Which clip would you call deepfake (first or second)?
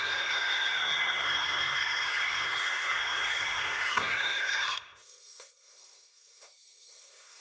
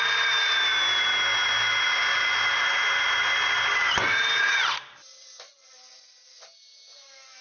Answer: first